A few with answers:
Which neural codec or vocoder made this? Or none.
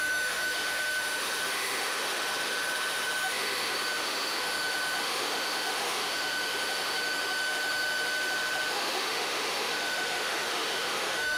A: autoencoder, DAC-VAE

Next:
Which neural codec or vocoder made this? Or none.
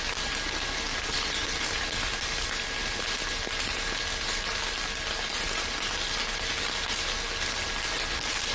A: none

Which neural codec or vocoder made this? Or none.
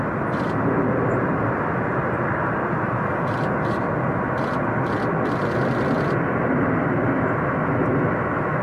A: none